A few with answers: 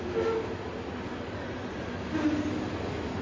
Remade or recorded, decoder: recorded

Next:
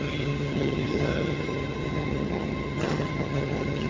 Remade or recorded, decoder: remade, vocoder, HiFi-GAN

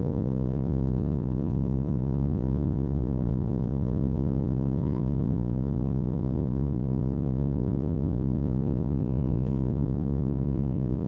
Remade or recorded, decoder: remade, vocoder, Vocos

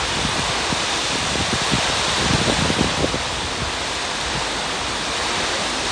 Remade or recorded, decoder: recorded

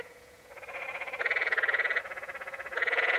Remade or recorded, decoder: remade, vocoder, Vocos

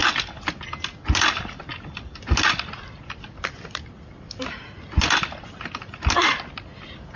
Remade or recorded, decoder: recorded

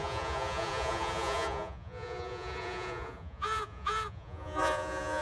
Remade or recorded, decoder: remade, vocoder, Vocos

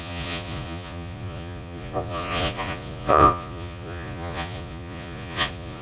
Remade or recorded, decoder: remade, vocoder, Vocos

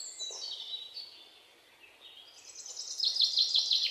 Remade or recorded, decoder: recorded